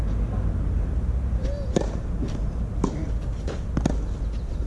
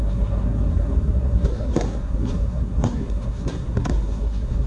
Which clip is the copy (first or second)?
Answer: second